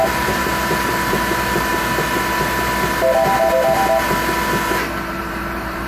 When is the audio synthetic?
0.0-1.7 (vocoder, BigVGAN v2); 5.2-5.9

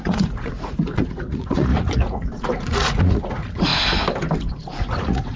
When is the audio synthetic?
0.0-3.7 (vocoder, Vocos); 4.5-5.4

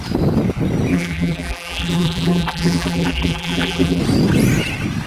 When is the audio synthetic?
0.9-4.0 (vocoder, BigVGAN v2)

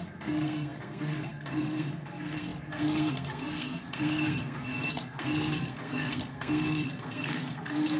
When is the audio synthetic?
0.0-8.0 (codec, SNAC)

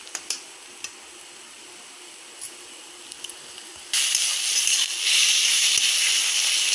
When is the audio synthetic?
none

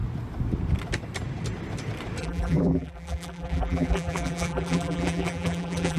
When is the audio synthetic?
2.2-6.0 (vocoder, BigVGAN v2)

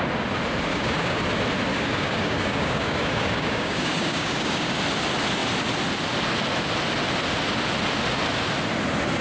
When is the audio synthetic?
0.7-1.2 (codec, DAC); 1.7-4.8